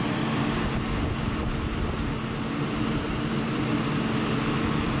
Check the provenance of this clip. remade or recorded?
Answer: recorded